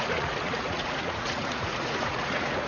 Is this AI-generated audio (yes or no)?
yes